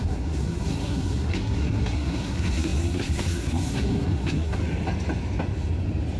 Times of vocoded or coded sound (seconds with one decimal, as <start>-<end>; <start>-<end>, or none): 0.0-4.6